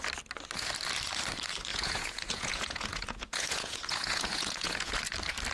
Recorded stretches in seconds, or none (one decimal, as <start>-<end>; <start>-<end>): 0.0-1.7; 5.0-5.5